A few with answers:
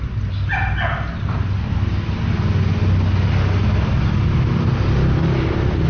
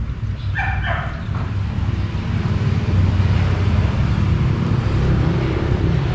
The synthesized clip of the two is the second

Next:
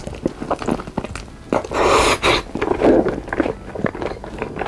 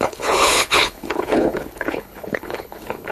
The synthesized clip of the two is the second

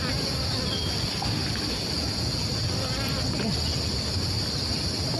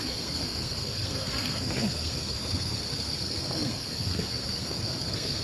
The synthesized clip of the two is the second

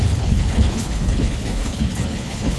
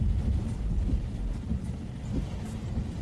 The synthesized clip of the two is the first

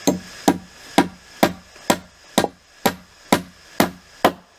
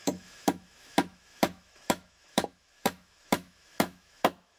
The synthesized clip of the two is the second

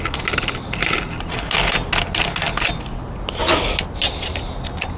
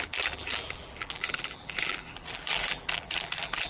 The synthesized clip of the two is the second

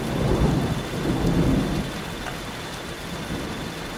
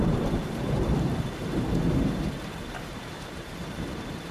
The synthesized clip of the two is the second